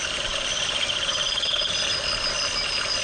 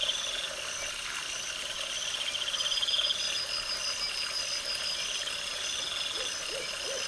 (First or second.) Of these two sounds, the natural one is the second